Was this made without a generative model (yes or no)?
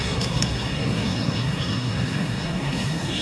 no